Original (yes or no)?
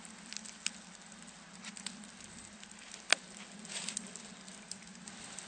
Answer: yes